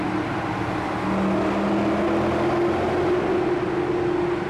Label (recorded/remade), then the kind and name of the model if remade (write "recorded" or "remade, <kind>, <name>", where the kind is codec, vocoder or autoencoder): recorded